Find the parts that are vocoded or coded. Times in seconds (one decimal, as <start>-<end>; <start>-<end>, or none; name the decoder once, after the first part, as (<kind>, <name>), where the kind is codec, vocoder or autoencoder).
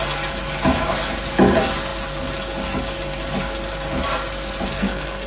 4.7-5.3 (codec, SNAC)